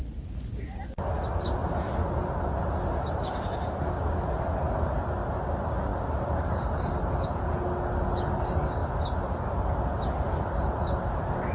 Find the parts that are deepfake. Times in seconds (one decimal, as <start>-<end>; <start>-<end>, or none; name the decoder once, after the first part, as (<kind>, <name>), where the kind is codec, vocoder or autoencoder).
1.6-2.1 (vocoder, BigVGAN v2); 5.9-6.9